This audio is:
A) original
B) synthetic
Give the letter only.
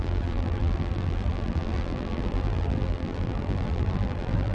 B